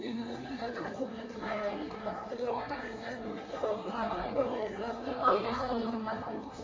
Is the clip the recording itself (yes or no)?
no